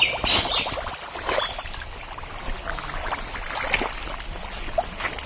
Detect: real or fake real